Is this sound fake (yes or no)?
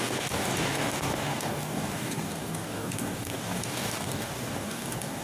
yes